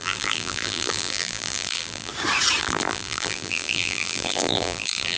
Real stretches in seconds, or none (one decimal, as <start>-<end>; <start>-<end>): 2.1-2.6